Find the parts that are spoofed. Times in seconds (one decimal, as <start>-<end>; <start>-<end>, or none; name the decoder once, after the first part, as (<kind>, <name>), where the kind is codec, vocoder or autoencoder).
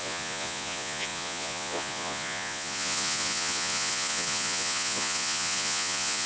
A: 0.0-6.3 (vocoder, Vocos)